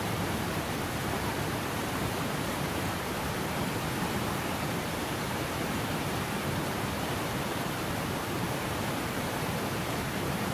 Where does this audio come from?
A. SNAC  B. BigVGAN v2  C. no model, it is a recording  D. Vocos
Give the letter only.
B